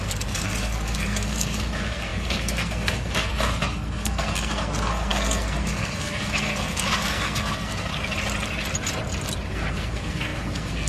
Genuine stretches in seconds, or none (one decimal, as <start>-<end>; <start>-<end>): 7.9-9.5